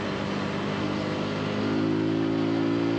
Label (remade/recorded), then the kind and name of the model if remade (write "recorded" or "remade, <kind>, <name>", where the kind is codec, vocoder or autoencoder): recorded